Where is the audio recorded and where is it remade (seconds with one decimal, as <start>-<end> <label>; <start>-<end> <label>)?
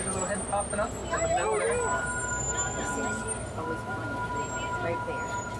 0.0-5.6 recorded